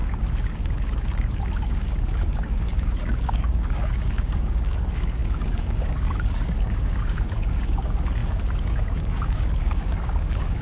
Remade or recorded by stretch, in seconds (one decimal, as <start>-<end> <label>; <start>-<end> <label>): 0.0-10.6 remade